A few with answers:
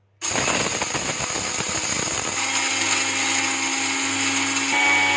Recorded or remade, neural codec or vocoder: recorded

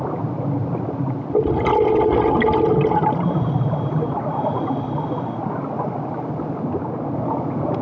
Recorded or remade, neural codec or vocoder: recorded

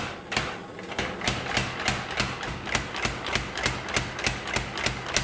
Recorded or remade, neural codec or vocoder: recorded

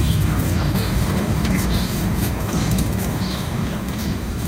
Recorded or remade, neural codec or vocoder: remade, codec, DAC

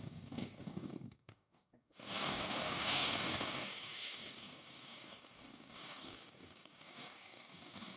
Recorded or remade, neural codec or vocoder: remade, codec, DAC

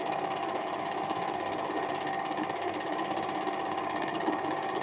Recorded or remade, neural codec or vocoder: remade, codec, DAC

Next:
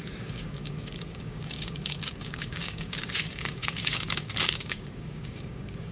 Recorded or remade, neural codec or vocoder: remade, codec, DAC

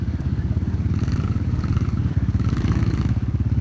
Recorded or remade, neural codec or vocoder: remade, codec, DAC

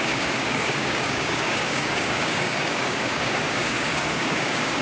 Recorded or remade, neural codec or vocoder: remade, codec, DAC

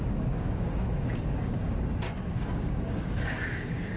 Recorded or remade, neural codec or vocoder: remade, codec, DAC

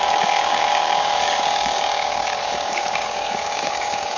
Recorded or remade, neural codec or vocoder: remade, codec, DAC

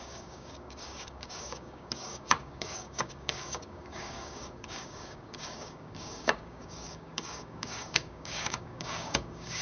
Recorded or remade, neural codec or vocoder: remade, codec, DAC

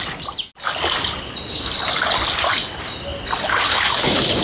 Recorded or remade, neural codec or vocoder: recorded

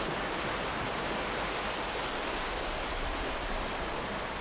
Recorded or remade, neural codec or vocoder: recorded